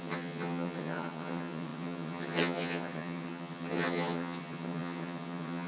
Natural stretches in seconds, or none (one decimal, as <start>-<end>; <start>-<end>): none